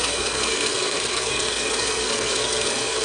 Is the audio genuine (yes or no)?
no